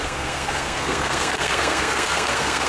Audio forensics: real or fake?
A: fake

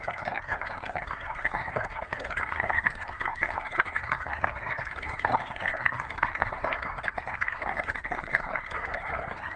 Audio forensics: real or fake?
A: fake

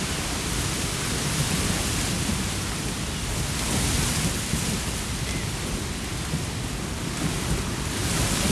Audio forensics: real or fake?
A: real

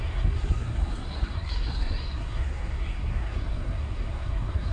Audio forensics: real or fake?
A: fake